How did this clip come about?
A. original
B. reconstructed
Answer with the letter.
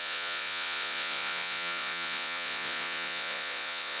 B